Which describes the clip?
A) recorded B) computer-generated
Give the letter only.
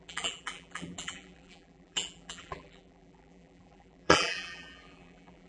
B